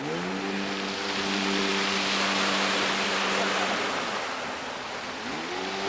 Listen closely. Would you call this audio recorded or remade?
recorded